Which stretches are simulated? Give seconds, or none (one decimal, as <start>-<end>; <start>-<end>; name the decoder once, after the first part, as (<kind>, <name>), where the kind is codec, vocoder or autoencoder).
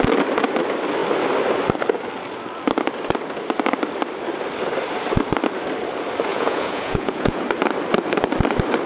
6.3-7.4 (vocoder, Vocos)